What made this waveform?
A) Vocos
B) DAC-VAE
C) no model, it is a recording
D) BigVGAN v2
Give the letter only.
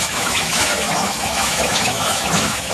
B